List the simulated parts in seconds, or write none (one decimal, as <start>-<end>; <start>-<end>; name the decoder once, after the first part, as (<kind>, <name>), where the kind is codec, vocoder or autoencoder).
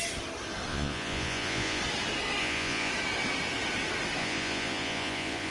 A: 0.7-1.8 (vocoder, Vocos); 2.4-2.9; 4.2-5.5